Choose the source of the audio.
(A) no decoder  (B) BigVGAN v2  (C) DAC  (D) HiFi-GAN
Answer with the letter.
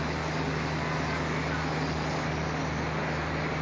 A